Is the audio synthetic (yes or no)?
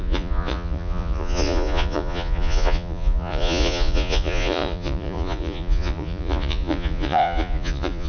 yes